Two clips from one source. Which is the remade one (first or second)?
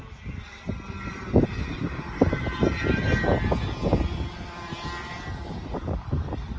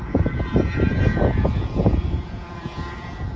second